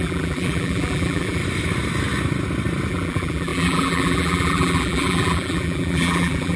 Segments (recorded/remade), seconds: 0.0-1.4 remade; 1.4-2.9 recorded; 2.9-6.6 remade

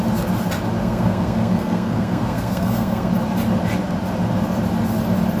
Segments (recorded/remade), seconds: 0.0-0.8 recorded; 0.8-3.1 remade; 3.1-5.4 recorded

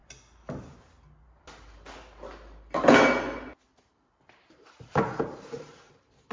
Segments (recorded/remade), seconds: 0.0-3.5 recorded; 3.5-6.3 remade

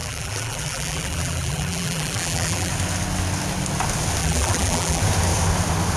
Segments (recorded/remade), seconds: 0.0-2.7 remade; 2.7-4.2 recorded; 4.2-5.0 remade; 5.0-6.0 recorded

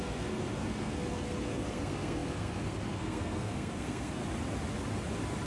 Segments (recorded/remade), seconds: 0.0-4.2 remade; 4.2-5.5 recorded

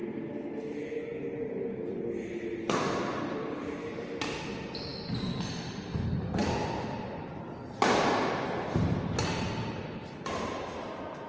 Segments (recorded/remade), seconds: 0.0-6.4 recorded; 6.4-7.6 remade; 7.6-11.3 recorded

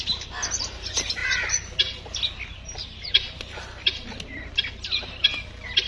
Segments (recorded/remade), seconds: 0.0-5.9 recorded